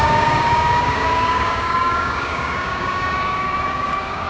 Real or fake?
fake